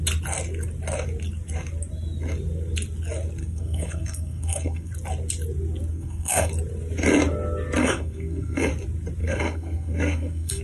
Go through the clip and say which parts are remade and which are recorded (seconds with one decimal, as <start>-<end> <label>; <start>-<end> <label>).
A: 0.0-3.4 recorded; 3.4-4.9 remade; 4.9-5.9 recorded; 5.9-6.5 remade; 6.5-7.8 recorded; 7.8-8.7 remade; 8.7-9.2 recorded; 9.2-10.6 remade